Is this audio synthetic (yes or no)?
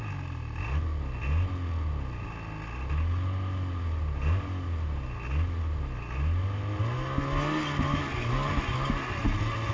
no